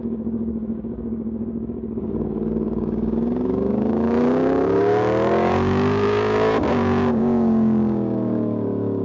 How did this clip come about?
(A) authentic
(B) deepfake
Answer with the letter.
B